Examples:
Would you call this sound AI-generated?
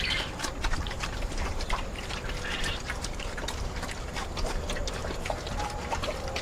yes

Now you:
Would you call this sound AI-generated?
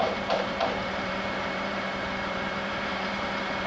yes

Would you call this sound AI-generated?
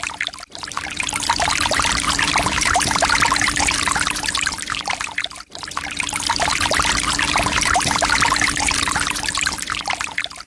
yes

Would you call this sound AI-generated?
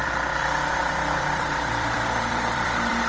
yes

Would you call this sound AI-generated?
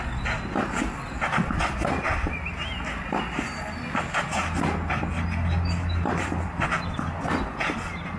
no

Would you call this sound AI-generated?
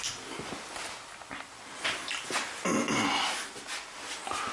no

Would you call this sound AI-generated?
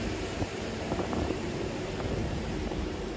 yes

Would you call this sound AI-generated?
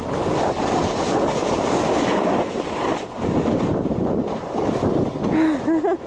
no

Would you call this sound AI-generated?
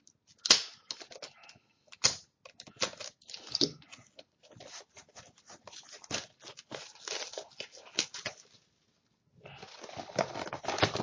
no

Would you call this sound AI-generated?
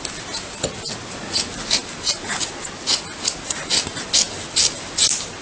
no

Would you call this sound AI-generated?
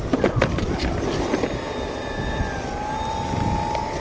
no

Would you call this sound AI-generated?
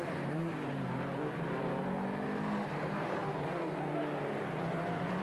yes